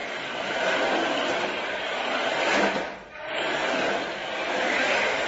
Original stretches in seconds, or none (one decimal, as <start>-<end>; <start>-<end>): 0.0-1.2